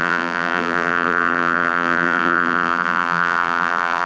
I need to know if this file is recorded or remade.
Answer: remade